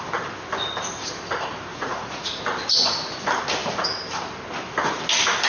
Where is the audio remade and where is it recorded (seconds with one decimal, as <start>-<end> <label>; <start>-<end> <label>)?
0.0-1.7 recorded; 1.7-2.4 remade; 2.4-5.5 recorded